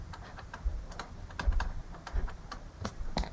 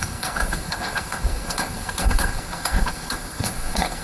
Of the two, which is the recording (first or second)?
first